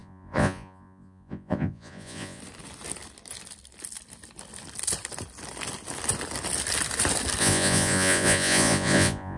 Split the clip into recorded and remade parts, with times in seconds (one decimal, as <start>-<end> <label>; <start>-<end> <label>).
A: 0.0-2.4 remade; 2.4-7.4 recorded; 7.4-9.4 remade